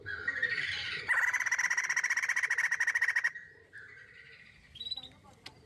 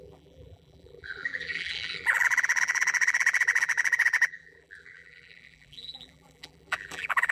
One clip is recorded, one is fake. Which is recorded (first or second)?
first